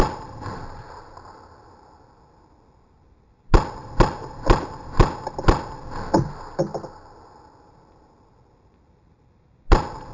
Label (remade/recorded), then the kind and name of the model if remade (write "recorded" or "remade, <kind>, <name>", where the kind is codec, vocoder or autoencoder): recorded